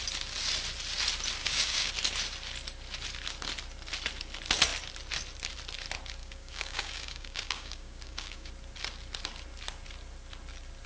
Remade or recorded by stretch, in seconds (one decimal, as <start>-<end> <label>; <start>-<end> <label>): 0.0-1.4 recorded; 1.4-1.9 remade; 1.9-6.2 recorded; 6.2-8.5 remade; 8.5-10.9 recorded